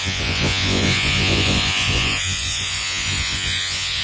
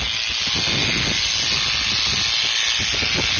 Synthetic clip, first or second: first